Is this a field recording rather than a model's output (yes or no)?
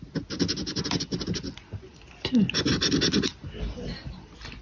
yes